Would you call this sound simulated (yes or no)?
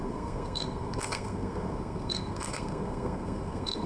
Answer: yes